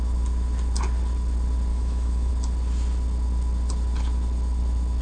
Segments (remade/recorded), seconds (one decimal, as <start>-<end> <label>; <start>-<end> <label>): 0.0-1.7 recorded; 1.7-2.3 remade; 2.3-5.0 recorded